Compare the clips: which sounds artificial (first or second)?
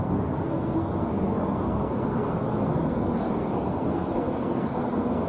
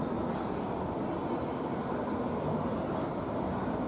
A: first